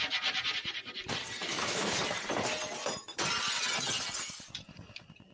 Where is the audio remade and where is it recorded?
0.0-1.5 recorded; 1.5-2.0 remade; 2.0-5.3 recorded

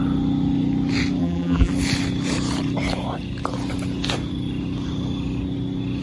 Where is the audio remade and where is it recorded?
0.0-1.2 recorded; 1.2-1.7 remade; 1.7-6.0 recorded